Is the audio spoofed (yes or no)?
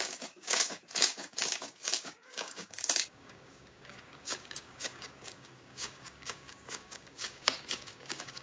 yes